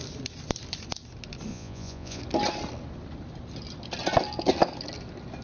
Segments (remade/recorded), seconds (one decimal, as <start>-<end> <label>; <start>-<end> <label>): 0.0-1.5 recorded; 1.5-2.2 remade; 2.2-5.4 recorded